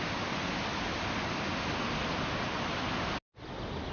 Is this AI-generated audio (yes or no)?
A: no